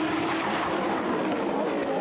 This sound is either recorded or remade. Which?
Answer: recorded